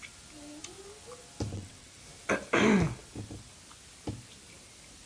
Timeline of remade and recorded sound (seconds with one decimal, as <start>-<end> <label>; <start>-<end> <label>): 0.0-1.5 recorded; 1.5-2.0 remade; 2.0-5.1 recorded